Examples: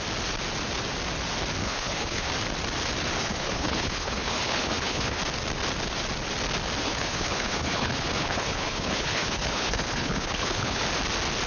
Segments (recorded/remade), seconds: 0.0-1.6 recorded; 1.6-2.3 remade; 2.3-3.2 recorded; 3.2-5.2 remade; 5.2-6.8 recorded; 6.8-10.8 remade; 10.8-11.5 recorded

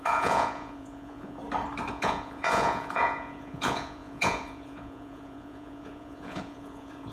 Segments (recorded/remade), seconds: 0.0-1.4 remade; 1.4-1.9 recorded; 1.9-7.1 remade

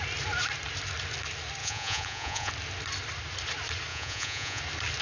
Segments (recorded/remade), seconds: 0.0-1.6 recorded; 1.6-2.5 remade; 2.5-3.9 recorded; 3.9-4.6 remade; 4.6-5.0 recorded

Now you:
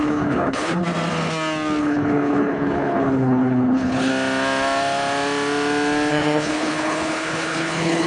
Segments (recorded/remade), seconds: 0.0-0.8 remade; 0.8-1.8 recorded; 1.8-4.1 remade; 4.1-6.1 recorded; 6.1-8.1 remade